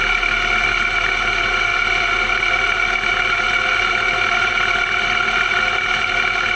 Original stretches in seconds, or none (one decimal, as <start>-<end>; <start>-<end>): 0.0-6.6